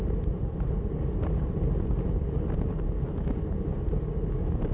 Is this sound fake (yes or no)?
no